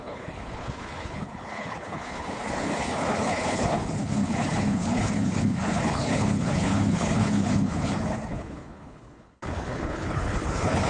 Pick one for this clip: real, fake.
fake